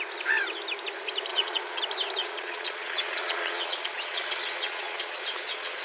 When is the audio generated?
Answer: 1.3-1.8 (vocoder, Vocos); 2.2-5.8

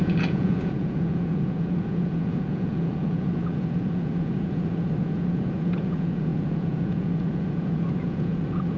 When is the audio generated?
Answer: 0.0-8.8 (vocoder, Vocos)

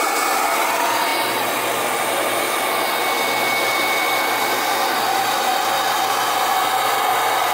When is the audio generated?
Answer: none

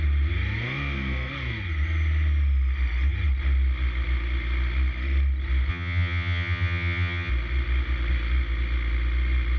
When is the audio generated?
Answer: 5.7-7.3 (vocoder, HiFi-GAN)

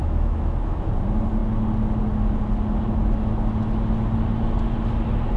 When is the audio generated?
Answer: 0.0-0.9 (autoencoder, DAC-VAE)